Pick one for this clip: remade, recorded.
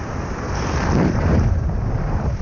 remade